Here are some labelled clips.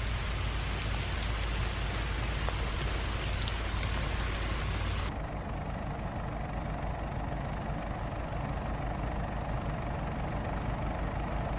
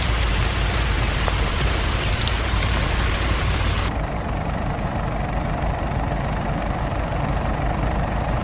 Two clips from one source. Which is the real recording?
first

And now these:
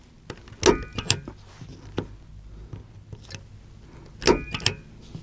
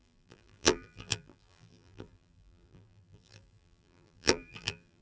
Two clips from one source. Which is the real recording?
first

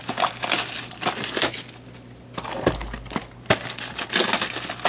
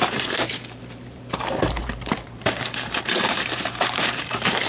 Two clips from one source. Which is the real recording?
first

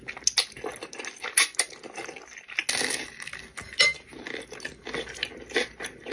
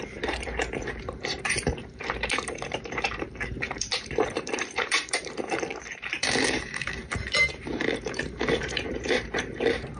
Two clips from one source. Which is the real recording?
first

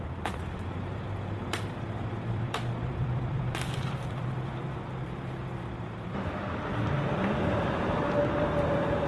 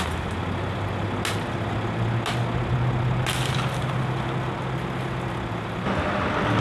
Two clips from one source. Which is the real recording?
second